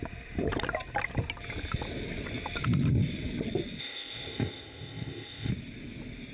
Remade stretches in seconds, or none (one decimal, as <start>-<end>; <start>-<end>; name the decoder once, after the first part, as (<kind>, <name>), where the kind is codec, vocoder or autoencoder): 3.8-5.5 (codec, ZipCodec)